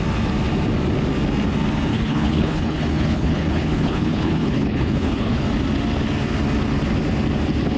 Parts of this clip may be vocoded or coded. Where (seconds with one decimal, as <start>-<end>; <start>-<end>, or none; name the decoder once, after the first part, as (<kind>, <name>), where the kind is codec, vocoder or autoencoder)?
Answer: 1.9-5.4 (codec, HILCodec)